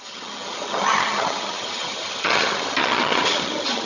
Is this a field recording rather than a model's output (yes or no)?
no